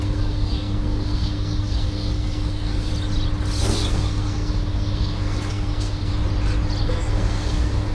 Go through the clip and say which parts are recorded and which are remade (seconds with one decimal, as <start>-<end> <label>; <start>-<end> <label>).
0.0-2.9 remade; 2.9-3.6 recorded; 3.6-6.1 remade; 6.1-6.8 recorded; 6.8-7.9 remade